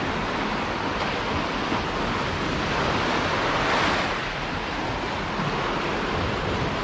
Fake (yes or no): no